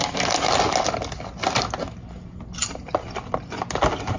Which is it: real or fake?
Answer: real